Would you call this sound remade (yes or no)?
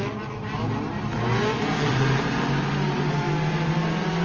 no